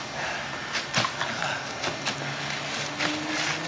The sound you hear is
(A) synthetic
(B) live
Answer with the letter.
B